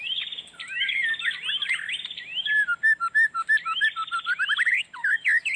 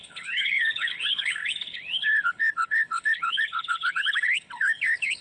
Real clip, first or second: first